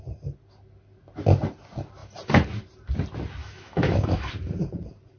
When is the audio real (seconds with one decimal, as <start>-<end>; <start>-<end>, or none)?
0.0-3.4; 4.3-5.2